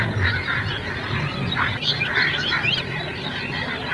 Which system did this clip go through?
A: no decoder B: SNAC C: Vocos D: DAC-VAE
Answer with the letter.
A